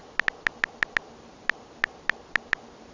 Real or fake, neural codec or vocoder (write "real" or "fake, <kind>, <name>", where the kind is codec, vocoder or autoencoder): real